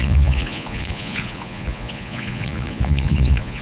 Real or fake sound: fake